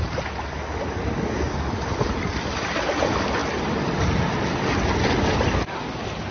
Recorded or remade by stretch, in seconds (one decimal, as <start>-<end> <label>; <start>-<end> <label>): 0.0-6.3 recorded